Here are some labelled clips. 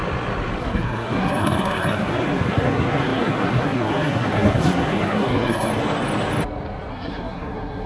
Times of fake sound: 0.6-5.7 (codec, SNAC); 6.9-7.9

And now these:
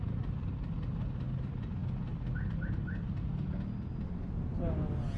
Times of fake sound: none